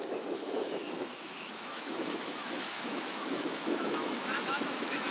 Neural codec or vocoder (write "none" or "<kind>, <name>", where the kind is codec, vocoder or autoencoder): autoencoder, DAC-VAE